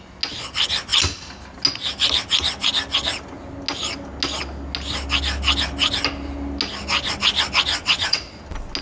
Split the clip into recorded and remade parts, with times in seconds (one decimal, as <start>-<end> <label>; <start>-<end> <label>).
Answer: 0.0-7.7 recorded; 7.7-8.4 remade; 8.4-8.8 recorded